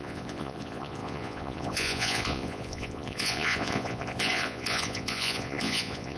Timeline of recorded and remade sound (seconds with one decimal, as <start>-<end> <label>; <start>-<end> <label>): 0.0-6.2 remade